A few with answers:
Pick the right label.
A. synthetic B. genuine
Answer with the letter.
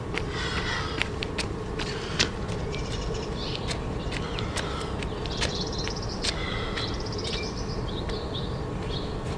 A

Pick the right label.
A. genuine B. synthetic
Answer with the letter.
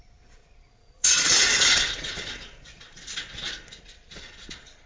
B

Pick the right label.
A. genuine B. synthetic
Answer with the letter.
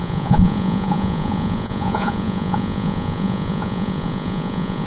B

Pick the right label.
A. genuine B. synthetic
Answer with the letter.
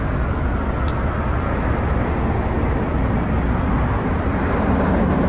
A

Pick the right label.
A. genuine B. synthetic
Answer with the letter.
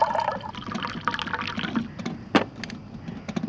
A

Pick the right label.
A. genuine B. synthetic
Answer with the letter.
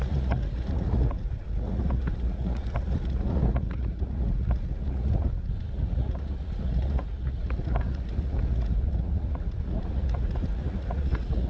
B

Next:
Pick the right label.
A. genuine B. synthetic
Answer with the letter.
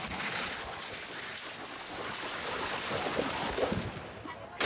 A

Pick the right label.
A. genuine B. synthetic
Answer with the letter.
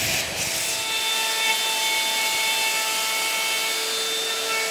A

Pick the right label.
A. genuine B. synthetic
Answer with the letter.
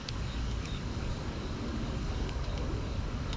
B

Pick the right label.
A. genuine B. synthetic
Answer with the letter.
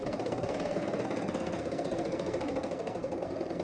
B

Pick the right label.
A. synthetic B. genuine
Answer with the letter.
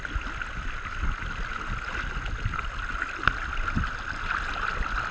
B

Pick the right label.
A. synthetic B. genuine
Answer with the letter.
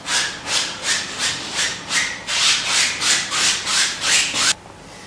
B